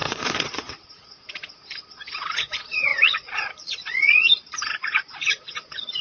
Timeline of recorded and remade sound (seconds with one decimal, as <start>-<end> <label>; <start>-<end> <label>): 0.0-6.0 remade